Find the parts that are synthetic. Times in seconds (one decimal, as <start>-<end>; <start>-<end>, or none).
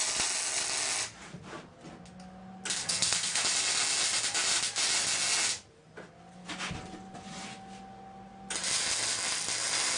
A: 2.8-3.4